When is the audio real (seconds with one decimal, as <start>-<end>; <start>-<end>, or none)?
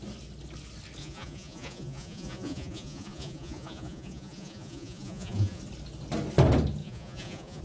0.0-1.0; 5.6-6.8